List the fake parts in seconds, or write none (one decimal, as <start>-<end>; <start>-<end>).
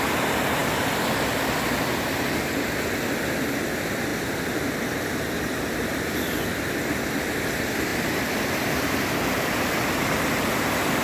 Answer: 0.0-0.6; 3.6-11.0